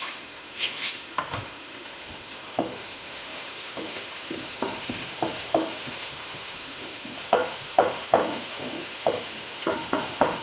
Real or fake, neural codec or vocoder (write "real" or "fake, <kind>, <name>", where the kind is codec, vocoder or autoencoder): fake, autoencoder, DAC-VAE